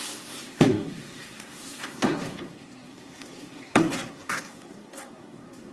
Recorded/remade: remade